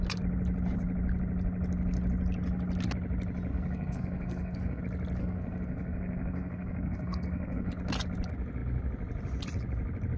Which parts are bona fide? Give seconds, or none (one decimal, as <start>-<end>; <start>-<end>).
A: 0.0-3.5; 4.8-5.2; 7.7-10.2